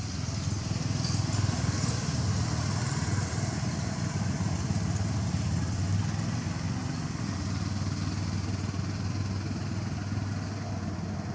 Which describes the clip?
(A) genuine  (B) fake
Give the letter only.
A